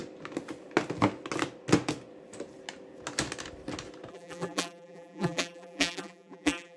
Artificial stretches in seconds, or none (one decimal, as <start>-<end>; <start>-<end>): 4.1-6.8